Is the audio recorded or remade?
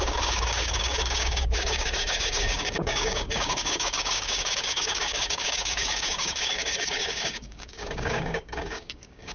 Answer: remade